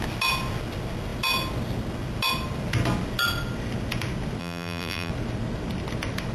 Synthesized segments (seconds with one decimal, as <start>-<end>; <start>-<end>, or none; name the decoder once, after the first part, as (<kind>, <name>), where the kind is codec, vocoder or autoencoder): 4.4-5.1 (vocoder, BigVGAN v2)